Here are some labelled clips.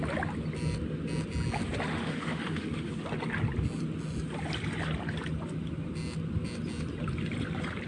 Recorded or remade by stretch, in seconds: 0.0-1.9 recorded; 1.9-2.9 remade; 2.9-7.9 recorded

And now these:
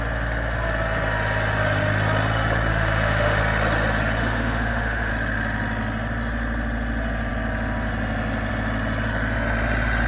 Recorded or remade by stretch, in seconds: 0.0-2.7 recorded; 2.7-3.4 remade; 3.4-4.2 recorded; 4.2-5.1 remade; 5.1-10.1 recorded

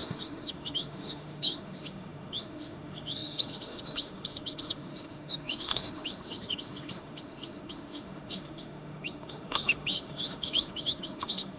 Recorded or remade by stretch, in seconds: 0.0-11.6 remade

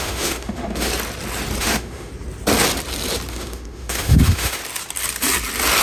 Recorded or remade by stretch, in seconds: 0.0-0.9 remade; 0.9-1.6 recorded; 1.6-2.1 remade; 2.1-3.3 recorded; 3.3-4.6 remade; 4.6-5.8 recorded

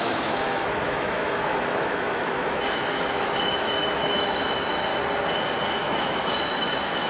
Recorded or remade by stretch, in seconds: 0.0-4.9 remade; 4.9-5.8 recorded; 5.8-7.1 remade

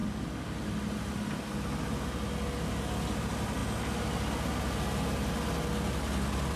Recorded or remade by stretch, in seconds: 0.0-6.6 recorded

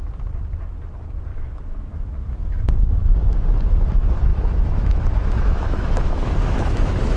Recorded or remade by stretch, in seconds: 0.0-1.3 recorded; 1.3-1.9 remade; 1.9-4.3 recorded; 4.3-7.2 remade